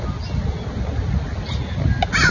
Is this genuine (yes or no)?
yes